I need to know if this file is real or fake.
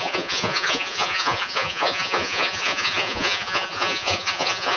fake